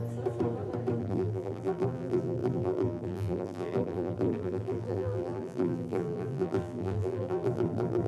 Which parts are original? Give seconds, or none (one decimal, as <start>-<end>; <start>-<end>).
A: 0.0-1.0